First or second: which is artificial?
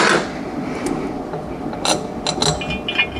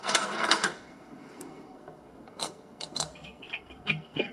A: second